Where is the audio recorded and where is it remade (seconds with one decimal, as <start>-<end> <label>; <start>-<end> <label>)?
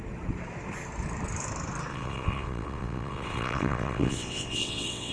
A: 0.0-1.9 recorded; 1.9-5.1 remade